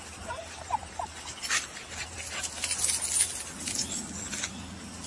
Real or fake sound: real